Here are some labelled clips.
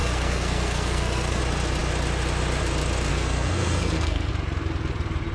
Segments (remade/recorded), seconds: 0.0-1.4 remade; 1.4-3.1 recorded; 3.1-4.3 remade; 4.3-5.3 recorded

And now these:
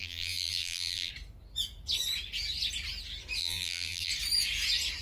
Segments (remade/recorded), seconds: 0.0-1.1 remade; 1.1-3.4 recorded; 3.4-4.1 remade; 4.1-5.0 recorded

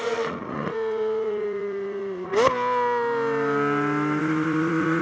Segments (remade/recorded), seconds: 0.0-2.3 remade; 2.3-4.2 recorded; 4.2-5.0 remade

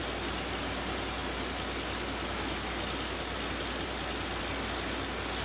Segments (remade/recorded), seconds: 0.0-5.4 recorded

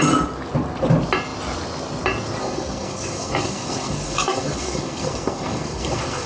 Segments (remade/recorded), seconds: 0.0-2.4 recorded; 2.4-6.3 remade